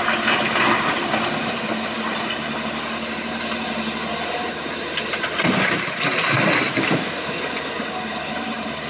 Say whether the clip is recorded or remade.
recorded